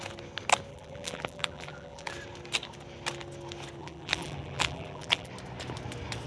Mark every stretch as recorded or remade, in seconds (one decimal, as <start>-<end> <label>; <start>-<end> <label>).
0.0-0.7 recorded; 0.7-2.1 remade; 2.1-3.8 recorded; 3.8-5.3 remade; 5.3-6.3 recorded